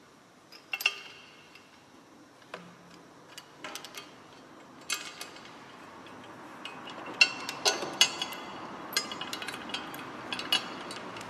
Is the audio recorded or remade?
recorded